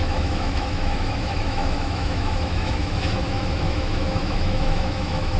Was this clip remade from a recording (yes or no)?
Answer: yes